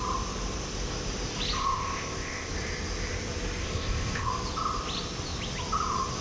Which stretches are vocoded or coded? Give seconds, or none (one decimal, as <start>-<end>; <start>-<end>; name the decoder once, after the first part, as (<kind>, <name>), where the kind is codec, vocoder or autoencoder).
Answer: 1.6-2.5 (codec, ZipCodec); 3.6-4.3